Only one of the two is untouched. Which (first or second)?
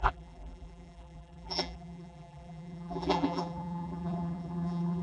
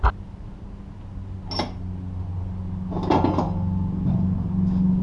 second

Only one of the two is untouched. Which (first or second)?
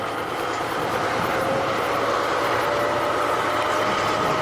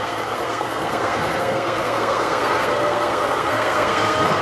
first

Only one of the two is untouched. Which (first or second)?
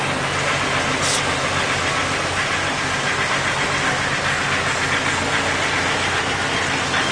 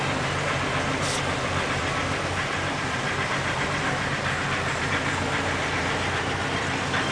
first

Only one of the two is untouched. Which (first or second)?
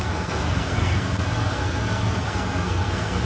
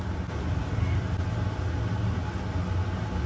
second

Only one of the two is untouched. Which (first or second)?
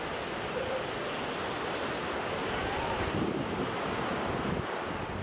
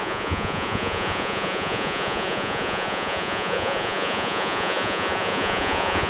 first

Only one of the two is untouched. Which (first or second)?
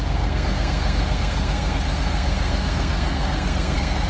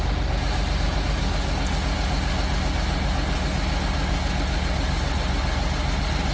second